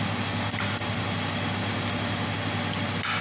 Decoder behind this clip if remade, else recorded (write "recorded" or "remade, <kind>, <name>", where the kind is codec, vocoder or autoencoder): recorded